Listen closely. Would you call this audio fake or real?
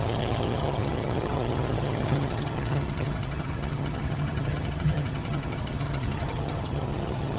fake